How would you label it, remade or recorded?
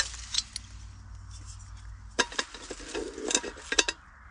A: recorded